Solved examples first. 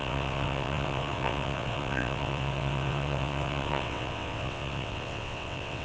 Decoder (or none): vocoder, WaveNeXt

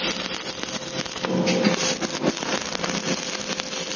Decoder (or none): none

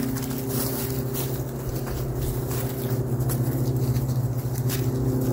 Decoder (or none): none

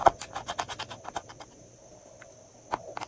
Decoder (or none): none